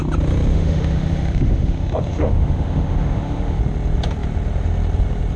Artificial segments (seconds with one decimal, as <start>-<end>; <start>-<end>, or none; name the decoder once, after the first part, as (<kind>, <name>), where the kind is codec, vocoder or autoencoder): 0.5-3.6 (autoencoder, DAC-VAE)